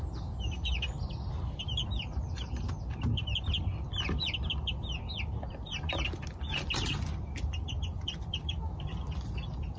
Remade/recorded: recorded